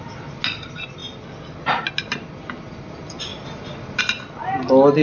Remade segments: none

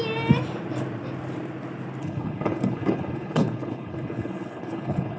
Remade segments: 2.0-5.2

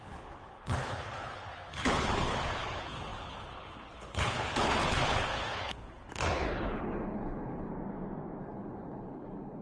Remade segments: 0.0-7.7; 8.4-9.6

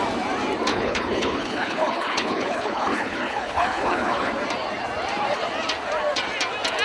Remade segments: 0.7-4.3